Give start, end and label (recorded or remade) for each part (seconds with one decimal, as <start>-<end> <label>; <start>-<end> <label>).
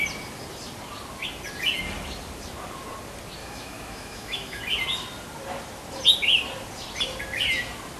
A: 0.0-3.4 recorded; 3.4-4.6 remade; 4.6-8.0 recorded